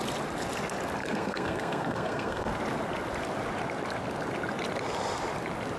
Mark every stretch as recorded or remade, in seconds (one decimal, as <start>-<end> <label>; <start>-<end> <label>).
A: 0.0-1.0 recorded; 1.0-2.5 remade; 2.5-5.8 recorded